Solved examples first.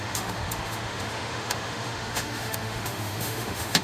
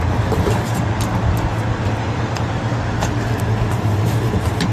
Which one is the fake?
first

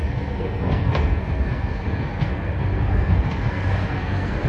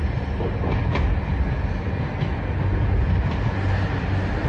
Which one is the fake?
first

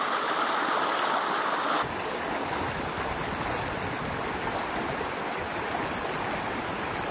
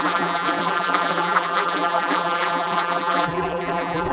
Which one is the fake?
second